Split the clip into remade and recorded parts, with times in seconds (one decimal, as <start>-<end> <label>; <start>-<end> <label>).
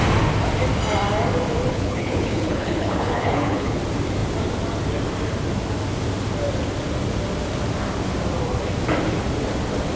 0.0-1.7 recorded; 1.7-3.8 remade; 3.8-10.0 recorded